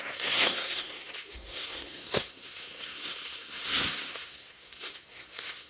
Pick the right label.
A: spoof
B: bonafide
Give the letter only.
A